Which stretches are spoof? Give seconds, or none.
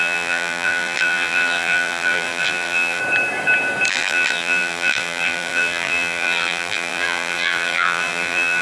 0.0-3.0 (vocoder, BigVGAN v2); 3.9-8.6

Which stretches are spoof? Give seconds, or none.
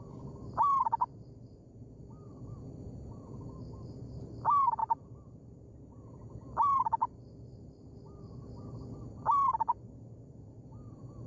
none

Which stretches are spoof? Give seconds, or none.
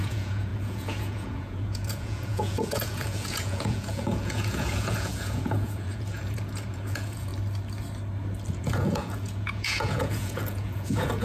0.0-7.3 (vocoder, Vocos); 8.5-11.2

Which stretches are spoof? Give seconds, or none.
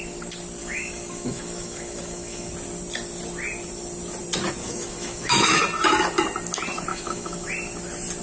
0.6-2.5 (autoencoder, DAC-VAE); 4.6-5.6; 6.9-7.5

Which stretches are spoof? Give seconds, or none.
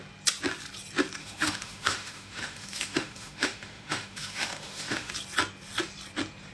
1.2-5.1 (autoencoder, DAC-VAE)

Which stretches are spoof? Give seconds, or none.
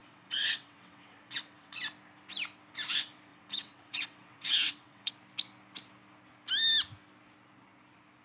0.0-1.8 (vocoder, WaveNeXt); 3.3-5.1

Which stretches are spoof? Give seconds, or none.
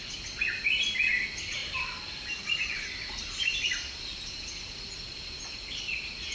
1.6-4.9 (vocoder, BigVGAN v2)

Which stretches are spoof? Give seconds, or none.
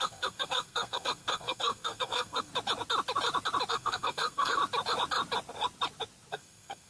0.0-2.5 (codec, SNAC); 3.7-4.6; 6.3-6.9